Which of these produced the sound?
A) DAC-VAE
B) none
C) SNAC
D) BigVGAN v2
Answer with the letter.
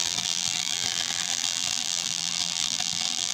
D